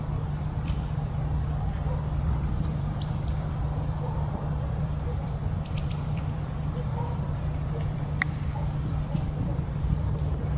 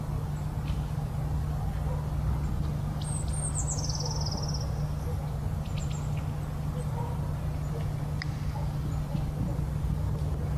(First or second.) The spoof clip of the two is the first